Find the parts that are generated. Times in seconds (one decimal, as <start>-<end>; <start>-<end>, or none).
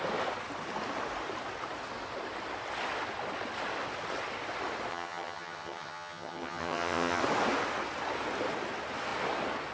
4.9-7.2